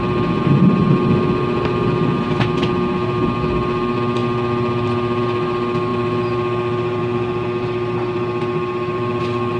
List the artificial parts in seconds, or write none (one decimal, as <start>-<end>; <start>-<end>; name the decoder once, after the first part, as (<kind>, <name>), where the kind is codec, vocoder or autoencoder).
none